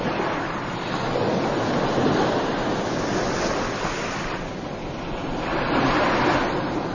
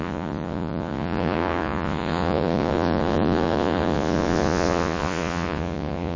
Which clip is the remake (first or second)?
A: second